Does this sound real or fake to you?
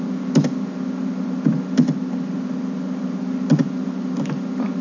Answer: real